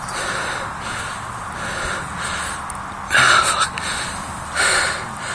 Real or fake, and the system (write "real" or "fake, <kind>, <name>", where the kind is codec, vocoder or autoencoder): real